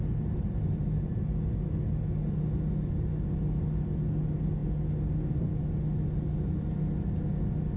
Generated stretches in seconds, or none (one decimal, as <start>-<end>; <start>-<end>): none